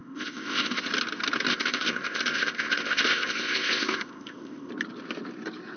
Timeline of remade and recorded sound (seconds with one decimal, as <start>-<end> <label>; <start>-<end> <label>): 0.0-0.8 remade; 0.8-1.5 recorded; 1.5-4.7 remade; 4.7-5.8 recorded